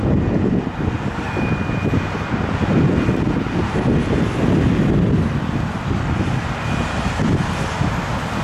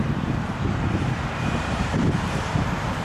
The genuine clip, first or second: first